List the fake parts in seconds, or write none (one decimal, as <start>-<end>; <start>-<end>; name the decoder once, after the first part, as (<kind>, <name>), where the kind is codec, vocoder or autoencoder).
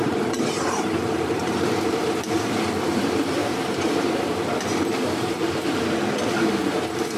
0.0-7.2 (vocoder, BigVGAN v2)